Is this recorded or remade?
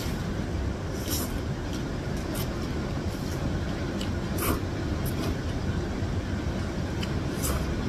recorded